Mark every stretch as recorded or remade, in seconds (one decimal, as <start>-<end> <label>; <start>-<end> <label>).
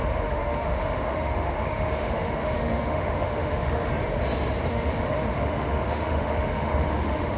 0.0-3.9 remade; 3.9-4.7 recorded; 4.7-7.4 remade